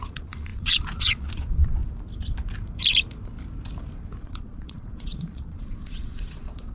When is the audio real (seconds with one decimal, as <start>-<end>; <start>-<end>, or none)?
1.8-4.2